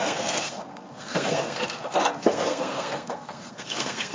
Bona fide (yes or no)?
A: no